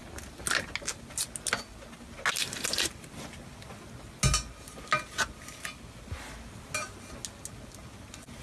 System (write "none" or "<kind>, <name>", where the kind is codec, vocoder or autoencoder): none